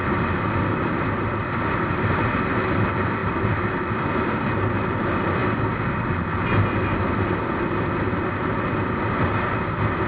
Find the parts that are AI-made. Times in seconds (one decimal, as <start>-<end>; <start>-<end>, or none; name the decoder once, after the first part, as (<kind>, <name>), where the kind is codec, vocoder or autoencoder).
none